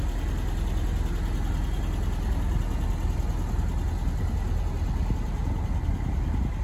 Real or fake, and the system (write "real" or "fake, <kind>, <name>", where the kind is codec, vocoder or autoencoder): real